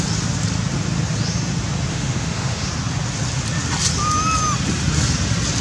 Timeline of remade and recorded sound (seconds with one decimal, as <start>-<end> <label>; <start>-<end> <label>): 0.0-1.9 recorded; 1.9-2.7 remade; 2.7-5.6 recorded